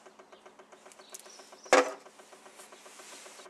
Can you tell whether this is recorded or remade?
recorded